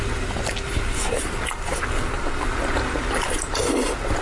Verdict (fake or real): real